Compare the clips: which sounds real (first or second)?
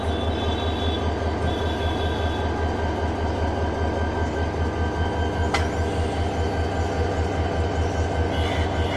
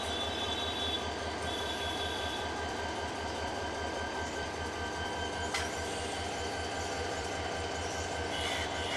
first